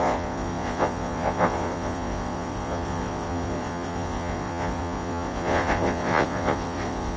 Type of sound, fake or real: fake